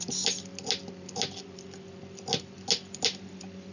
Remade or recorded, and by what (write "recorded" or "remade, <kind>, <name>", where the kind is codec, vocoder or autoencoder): recorded